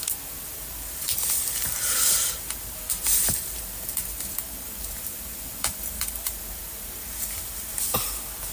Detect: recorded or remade remade